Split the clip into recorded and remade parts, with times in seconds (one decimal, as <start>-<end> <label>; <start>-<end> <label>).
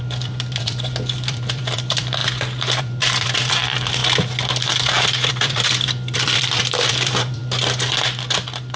0.0-2.2 remade; 2.2-2.8 recorded; 2.8-4.0 remade; 4.0-5.3 recorded; 5.3-7.4 remade; 7.4-8.8 recorded